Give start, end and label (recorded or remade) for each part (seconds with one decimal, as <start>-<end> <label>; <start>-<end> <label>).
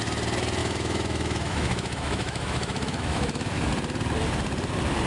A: 0.0-0.6 recorded; 0.6-3.7 remade; 3.7-5.1 recorded